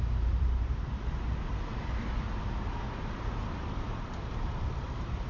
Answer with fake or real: fake